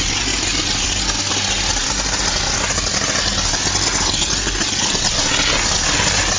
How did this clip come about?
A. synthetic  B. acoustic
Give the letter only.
B